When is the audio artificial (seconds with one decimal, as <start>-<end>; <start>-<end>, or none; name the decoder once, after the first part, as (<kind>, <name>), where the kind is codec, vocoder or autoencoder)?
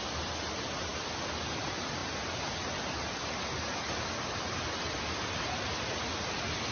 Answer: none